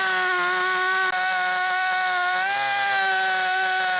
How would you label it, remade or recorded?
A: recorded